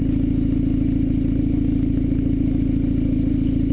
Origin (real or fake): real